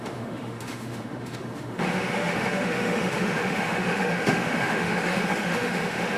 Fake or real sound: fake